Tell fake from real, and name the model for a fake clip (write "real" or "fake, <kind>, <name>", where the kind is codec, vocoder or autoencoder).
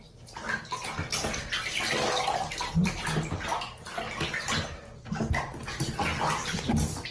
real